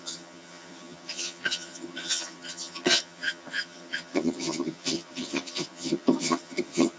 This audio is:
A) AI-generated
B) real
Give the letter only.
A